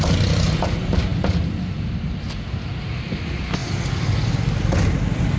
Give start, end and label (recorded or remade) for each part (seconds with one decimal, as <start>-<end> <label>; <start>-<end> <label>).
0.0-5.4 recorded